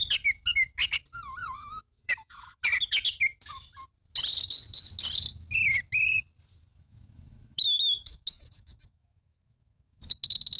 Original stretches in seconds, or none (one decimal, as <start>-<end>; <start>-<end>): 0.0-1.4; 2.6-6.7; 10.0-10.6